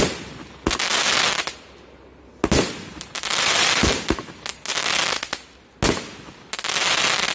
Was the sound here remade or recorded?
recorded